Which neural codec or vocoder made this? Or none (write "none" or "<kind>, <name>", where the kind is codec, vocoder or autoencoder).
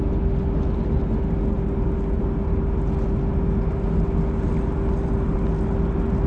none